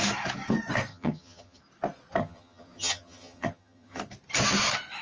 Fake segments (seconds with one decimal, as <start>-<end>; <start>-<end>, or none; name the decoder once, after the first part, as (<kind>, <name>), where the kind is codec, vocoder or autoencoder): 0.9-1.6 (vocoder, HiFi-GAN); 2.2-4.0